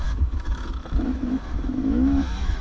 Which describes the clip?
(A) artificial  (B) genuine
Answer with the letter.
A